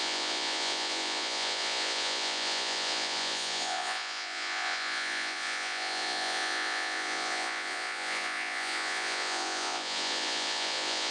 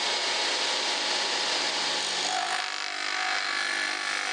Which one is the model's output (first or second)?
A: first